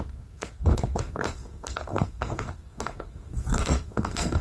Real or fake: fake